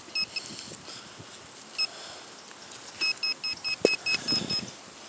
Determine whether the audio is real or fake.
real